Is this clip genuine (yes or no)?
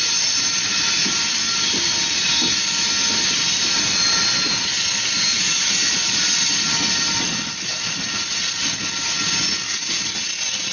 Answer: yes